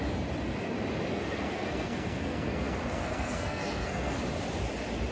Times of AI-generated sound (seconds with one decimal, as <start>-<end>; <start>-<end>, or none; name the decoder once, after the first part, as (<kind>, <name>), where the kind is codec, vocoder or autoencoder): 1.1-4.2 (codec, SNAC)